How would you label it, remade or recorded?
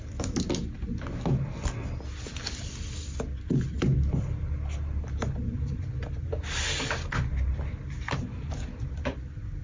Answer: recorded